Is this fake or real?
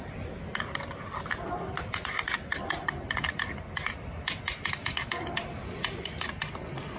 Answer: real